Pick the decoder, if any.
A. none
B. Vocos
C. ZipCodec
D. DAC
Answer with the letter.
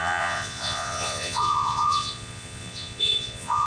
B